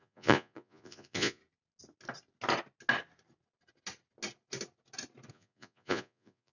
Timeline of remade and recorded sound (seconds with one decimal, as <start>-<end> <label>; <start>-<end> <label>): 0.0-1.4 remade; 1.4-5.3 recorded; 5.3-6.5 remade